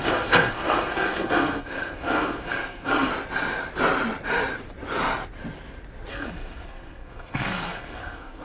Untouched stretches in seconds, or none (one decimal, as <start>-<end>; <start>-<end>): 3.1-6.1